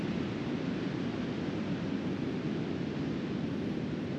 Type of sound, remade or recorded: recorded